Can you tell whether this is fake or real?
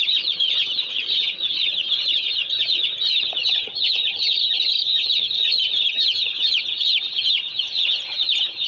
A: fake